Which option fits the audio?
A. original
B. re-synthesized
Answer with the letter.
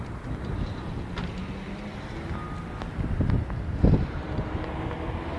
A